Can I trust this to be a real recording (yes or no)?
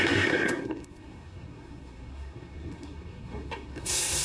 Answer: no